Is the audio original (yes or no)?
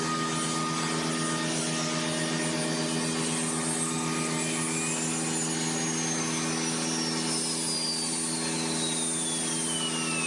yes